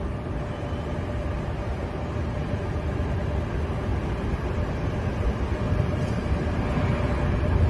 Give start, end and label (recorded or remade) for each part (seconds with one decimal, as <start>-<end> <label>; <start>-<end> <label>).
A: 0.0-7.7 recorded

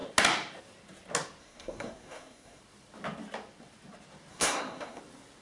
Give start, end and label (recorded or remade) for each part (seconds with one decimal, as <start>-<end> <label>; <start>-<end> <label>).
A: 0.0-1.4 recorded; 1.4-2.6 remade; 2.6-4.3 recorded; 4.3-5.0 remade; 5.0-5.4 recorded

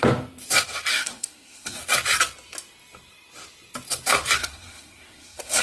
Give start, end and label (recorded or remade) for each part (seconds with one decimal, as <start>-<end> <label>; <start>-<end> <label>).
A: 0.0-0.9 recorded; 0.9-1.8 remade; 1.8-4.4 recorded; 4.4-5.6 remade

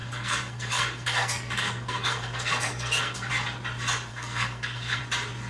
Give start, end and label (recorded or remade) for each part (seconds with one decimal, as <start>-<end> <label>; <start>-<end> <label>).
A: 0.0-3.3 remade; 3.3-4.1 recorded; 4.1-5.0 remade; 5.0-5.5 recorded